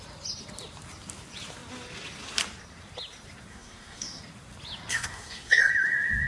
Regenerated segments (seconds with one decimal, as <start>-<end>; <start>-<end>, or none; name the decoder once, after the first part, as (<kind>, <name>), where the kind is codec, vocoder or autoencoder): 3.5-4.2 (codec, SNAC); 4.9-5.7

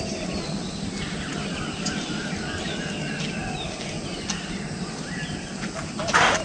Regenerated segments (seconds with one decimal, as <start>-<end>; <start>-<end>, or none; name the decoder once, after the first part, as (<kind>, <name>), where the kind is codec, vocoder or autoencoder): none